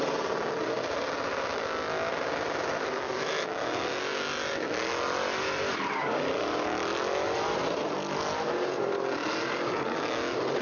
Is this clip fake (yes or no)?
no